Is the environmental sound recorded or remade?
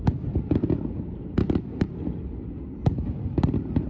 recorded